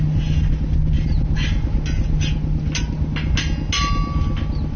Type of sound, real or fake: real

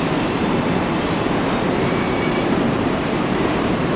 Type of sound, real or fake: fake